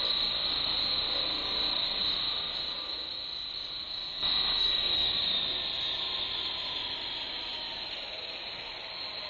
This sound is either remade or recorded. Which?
recorded